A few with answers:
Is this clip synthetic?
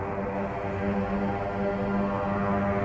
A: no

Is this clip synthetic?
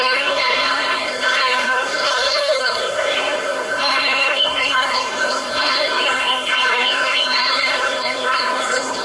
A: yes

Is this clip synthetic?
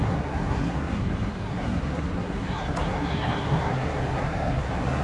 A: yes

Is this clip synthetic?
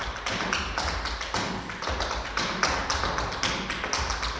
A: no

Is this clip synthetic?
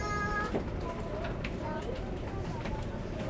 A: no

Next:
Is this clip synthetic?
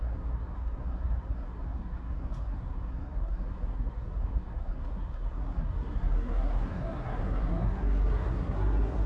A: yes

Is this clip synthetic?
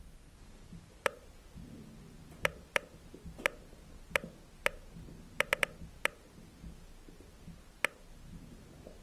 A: no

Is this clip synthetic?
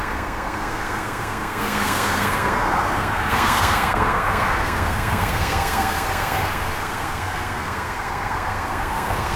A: yes